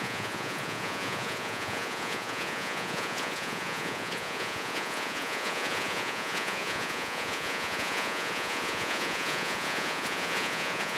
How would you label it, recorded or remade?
remade